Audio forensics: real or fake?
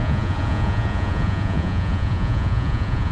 fake